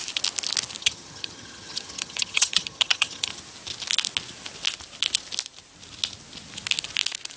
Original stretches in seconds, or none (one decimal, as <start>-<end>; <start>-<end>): 0.0-0.8; 3.3-7.4